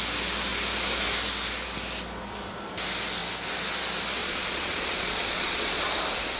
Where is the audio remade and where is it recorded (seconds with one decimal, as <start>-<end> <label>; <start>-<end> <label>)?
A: 0.0-4.2 recorded; 4.2-6.0 remade; 6.0-6.4 recorded